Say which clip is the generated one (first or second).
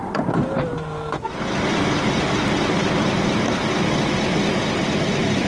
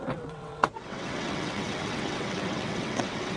second